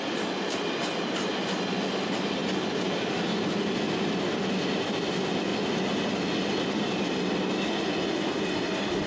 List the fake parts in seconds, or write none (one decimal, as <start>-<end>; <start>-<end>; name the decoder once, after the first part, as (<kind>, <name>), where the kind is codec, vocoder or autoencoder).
none